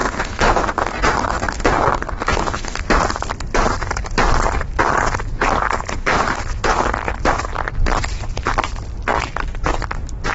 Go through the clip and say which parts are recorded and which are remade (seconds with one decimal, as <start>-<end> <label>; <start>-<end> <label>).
0.0-2.8 remade; 2.8-5.9 recorded; 5.9-6.4 remade; 6.4-10.3 recorded